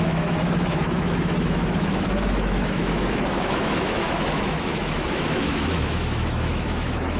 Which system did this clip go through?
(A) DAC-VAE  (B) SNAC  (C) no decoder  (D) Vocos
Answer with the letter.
A